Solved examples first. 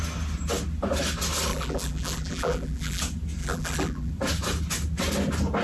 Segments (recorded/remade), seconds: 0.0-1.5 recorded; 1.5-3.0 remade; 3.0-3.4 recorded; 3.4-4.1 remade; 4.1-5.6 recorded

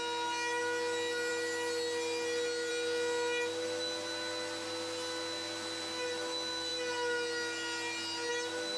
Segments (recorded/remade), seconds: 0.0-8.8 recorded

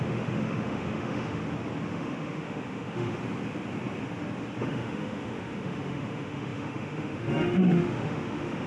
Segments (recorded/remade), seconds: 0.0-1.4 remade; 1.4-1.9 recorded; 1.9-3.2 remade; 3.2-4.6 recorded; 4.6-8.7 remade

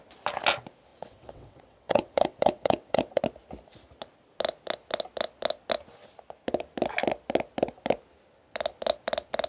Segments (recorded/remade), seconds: 0.0-0.9 recorded; 0.9-3.2 remade; 3.2-9.5 recorded

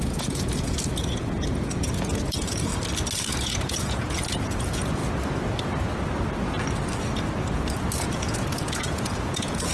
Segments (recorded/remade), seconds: 0.0-2.7 remade; 2.7-3.3 recorded; 3.3-5.0 remade; 5.0-8.0 recorded; 8.0-9.7 remade